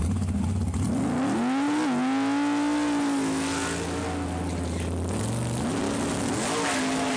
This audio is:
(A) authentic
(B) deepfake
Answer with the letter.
A